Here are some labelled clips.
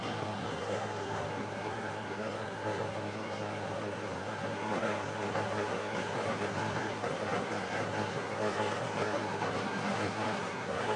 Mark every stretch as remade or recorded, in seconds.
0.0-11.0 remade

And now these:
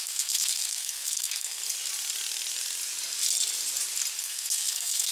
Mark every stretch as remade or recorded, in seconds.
0.0-1.6 remade; 1.6-4.2 recorded; 4.2-5.1 remade

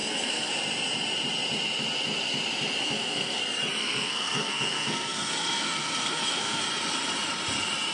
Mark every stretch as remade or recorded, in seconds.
0.0-0.5 remade; 0.5-2.8 recorded; 2.8-3.4 remade; 3.4-3.8 recorded; 3.8-6.6 remade; 6.6-7.9 recorded

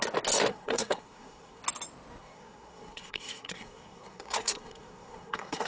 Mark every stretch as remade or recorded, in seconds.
0.0-0.5 recorded; 0.5-1.6 remade; 1.6-2.2 recorded; 2.2-5.7 remade

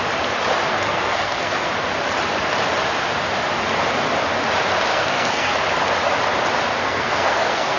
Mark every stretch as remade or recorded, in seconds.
0.0-0.7 recorded; 0.7-1.7 remade; 1.7-4.9 recorded; 4.9-5.5 remade; 5.5-6.8 recorded; 6.8-7.8 remade

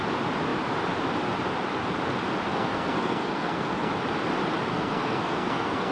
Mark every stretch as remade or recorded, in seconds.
0.0-2.5 recorded; 2.5-3.9 remade; 3.9-4.7 recorded; 4.7-5.9 remade